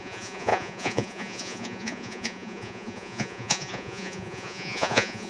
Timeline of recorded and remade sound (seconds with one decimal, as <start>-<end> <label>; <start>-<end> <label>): 0.0-5.3 remade

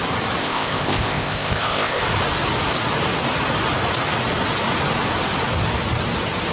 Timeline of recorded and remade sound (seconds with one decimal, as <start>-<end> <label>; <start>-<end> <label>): 0.0-0.4 recorded; 0.4-2.0 remade; 2.0-6.5 recorded

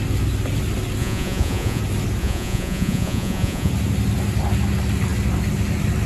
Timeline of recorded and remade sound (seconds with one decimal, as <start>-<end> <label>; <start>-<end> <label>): 0.0-1.0 recorded; 1.0-1.8 remade; 1.8-2.2 recorded; 2.2-3.7 remade; 3.7-6.1 recorded

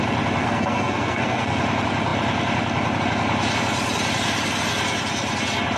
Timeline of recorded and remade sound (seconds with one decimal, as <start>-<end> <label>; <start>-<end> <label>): 0.0-0.4 recorded; 0.4-1.6 remade; 1.6-5.8 recorded

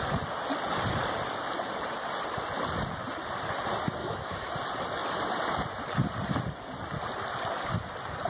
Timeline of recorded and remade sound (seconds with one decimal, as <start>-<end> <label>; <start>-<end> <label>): 0.0-4.0 recorded; 4.0-4.5 remade; 4.5-8.3 recorded

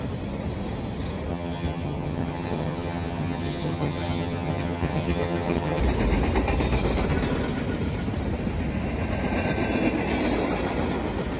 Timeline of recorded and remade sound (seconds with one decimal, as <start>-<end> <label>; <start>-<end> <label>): 0.0-1.3 recorded; 1.3-5.8 remade; 5.8-11.4 recorded

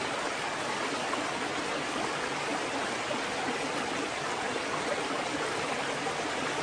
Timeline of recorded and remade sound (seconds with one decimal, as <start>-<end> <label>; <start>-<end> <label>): 0.0-6.6 recorded